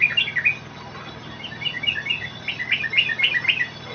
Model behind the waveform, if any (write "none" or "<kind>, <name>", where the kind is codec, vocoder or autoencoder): none